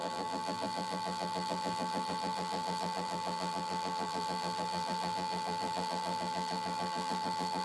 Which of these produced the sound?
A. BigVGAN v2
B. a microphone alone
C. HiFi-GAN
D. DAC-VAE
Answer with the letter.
A